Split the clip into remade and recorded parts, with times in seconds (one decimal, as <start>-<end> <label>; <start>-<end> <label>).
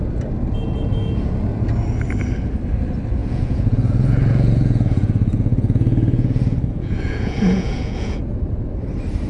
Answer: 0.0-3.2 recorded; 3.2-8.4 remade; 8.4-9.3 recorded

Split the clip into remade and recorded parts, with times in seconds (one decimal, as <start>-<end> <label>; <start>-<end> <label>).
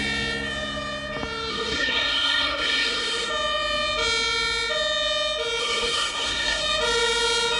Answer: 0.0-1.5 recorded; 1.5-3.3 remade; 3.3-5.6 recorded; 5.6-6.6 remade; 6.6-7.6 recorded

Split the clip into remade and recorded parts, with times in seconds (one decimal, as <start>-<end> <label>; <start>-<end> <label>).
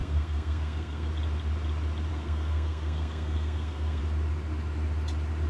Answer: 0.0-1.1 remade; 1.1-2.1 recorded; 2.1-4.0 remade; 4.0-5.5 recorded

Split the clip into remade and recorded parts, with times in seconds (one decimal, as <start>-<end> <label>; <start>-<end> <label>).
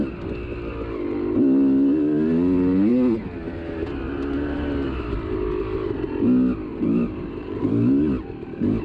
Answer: 0.0-6.7 recorded; 6.7-7.7 remade; 7.7-8.8 recorded